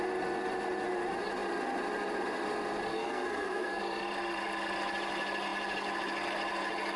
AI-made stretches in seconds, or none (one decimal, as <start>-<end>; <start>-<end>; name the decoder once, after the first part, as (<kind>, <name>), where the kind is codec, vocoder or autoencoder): 2.9-3.8 (codec, SNAC)

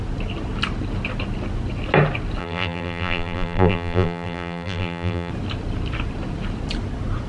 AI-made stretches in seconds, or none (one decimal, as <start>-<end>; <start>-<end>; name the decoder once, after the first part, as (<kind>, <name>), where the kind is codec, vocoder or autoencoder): 2.4-5.3 (vocoder, BigVGAN v2)

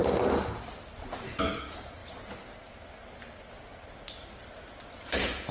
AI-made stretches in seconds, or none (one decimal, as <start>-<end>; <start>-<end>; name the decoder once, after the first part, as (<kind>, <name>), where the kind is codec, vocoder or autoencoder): none

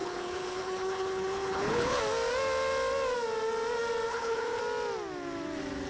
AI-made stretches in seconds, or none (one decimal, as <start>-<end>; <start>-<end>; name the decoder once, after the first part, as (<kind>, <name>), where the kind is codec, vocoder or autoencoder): 0.0-2.0 (codec, HILCodec); 4.1-4.6

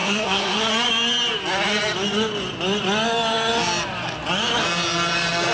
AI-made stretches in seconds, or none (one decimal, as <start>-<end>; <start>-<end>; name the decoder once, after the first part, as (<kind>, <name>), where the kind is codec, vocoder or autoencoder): 0.0-0.7 (codec, SNAC)